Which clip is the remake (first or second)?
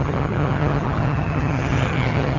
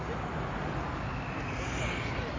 first